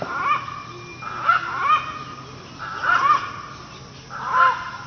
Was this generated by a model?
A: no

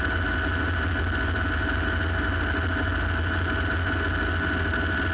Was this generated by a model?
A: no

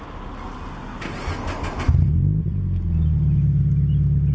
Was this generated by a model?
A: no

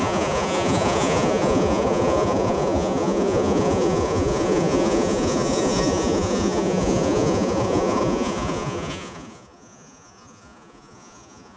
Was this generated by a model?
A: yes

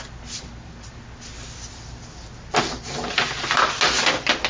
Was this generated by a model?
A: no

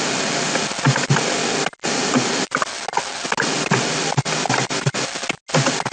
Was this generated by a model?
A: no